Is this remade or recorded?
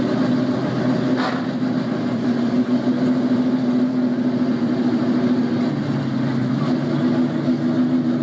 recorded